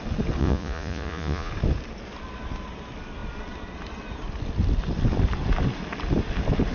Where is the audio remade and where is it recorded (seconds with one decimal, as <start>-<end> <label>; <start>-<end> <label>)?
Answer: 0.0-0.4 recorded; 0.4-1.5 remade; 1.5-6.7 recorded